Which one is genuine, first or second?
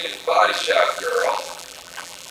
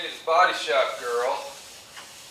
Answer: second